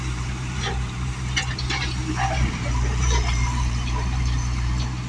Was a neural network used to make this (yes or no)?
yes